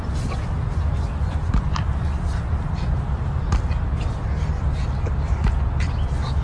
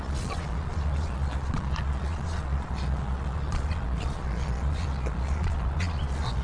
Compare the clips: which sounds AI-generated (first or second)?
second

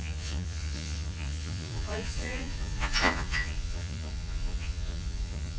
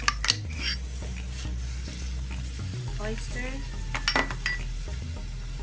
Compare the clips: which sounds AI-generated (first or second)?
first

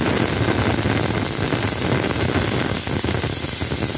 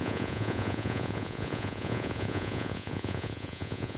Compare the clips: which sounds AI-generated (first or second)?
second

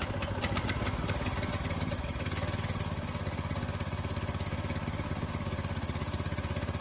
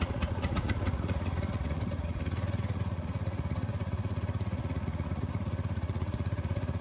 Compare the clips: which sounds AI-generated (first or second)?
second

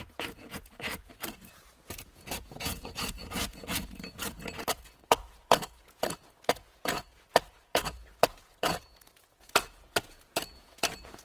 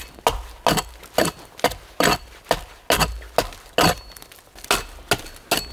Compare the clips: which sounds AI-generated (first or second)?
first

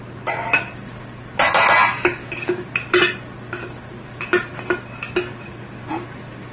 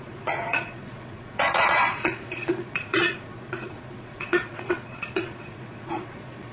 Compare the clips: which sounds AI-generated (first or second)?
second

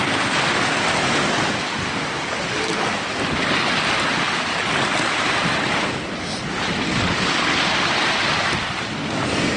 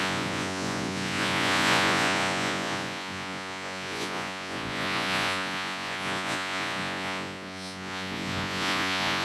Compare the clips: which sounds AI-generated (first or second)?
second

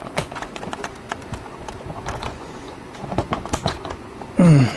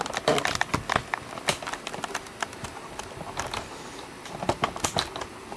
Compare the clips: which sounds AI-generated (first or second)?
first